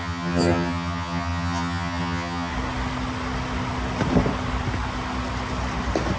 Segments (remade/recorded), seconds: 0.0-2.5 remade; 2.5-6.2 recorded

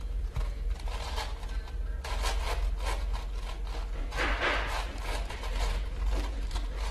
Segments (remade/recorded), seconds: 0.0-1.3 remade; 1.3-4.0 recorded; 4.0-6.9 remade

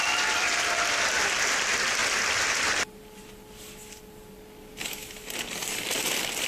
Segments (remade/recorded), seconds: 0.0-2.0 remade; 2.0-5.6 recorded; 5.6-6.5 remade

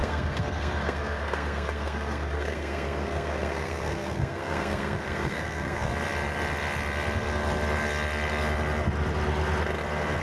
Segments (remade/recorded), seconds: 0.0-5.9 remade; 5.9-10.2 recorded

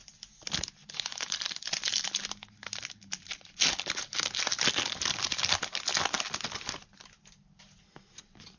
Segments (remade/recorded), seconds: 0.0-8.6 recorded

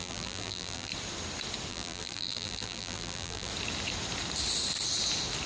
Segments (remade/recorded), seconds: 0.0-0.9 remade; 0.9-1.7 recorded; 1.7-3.5 remade; 3.5-5.5 recorded

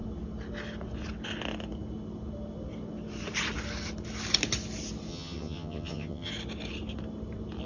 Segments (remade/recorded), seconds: 0.0-5.1 recorded; 5.1-6.3 remade; 6.3-7.7 recorded

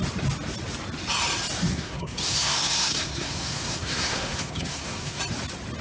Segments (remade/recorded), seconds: 0.0-1.7 recorded; 1.7-5.2 remade; 5.2-5.8 recorded